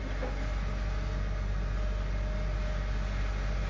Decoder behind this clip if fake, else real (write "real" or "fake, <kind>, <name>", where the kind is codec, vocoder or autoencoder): real